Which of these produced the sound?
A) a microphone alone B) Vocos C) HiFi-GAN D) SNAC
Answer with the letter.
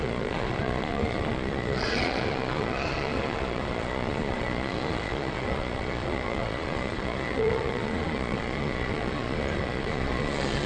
B